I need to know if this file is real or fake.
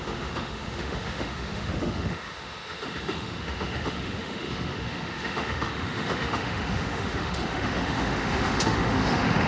fake